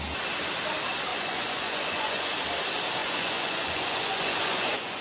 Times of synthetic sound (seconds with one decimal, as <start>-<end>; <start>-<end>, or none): 1.1-2.3; 3.0-5.0